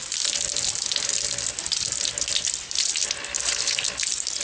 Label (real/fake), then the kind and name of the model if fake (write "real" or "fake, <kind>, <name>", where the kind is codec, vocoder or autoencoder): real